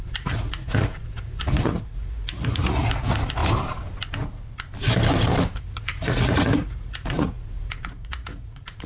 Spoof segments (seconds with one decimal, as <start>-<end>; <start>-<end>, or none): 0.0-3.4; 5.6-8.9